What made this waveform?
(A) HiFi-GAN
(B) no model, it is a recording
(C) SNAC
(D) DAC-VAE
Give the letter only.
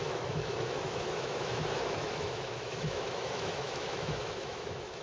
D